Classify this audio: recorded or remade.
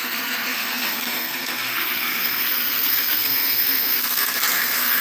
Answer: remade